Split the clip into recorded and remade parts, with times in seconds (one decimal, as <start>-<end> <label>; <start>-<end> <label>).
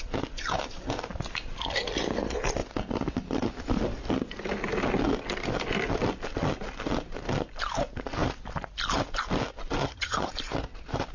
0.0-9.8 recorded; 9.8-10.3 remade; 10.3-11.1 recorded